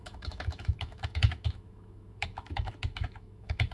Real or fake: fake